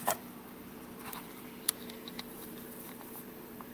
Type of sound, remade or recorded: remade